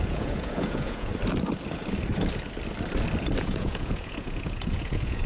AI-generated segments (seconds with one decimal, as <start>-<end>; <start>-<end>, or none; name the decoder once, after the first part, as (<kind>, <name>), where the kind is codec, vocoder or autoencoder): 0.0-1.1 (vocoder, Vocos); 3.4-5.3